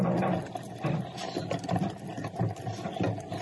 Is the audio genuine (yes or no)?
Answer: yes